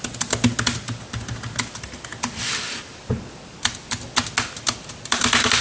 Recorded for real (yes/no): yes